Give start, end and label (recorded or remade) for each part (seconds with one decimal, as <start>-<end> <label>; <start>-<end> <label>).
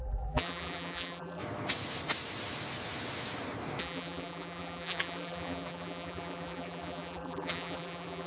0.0-1.4 remade; 1.4-3.8 recorded; 3.8-8.3 remade